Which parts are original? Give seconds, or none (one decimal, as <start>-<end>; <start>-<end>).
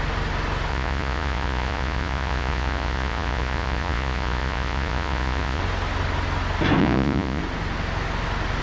0.0-0.7; 5.6-6.8; 7.4-8.6